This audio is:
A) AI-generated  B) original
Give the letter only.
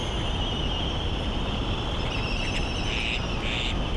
B